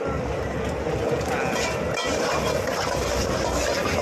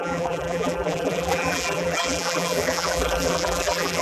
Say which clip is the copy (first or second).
second